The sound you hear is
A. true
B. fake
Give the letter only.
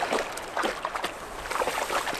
A